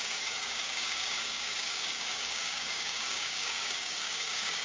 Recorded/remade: remade